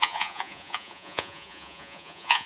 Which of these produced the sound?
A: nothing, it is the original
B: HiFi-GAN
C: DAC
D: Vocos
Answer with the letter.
D